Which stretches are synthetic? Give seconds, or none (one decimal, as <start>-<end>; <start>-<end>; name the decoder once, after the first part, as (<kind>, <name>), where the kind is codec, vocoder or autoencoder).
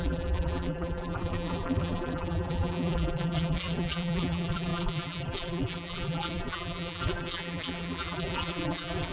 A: 0.0-9.1 (vocoder, BigVGAN v2)